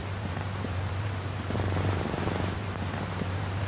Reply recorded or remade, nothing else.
remade